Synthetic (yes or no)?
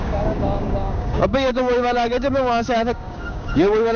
yes